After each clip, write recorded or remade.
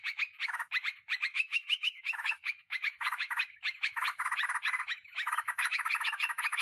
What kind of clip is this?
remade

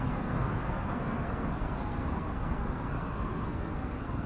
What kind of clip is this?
remade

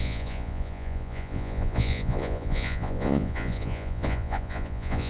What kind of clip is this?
remade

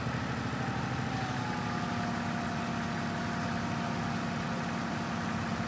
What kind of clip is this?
recorded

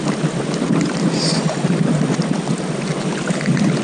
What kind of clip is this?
recorded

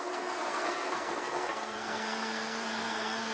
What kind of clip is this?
remade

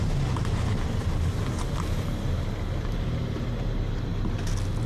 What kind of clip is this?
recorded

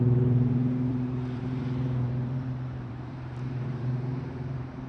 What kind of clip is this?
remade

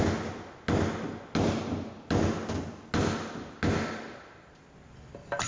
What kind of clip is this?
recorded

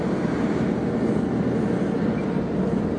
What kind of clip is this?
recorded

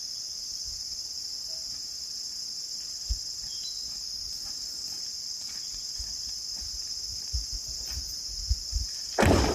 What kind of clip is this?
recorded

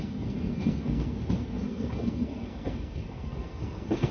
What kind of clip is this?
remade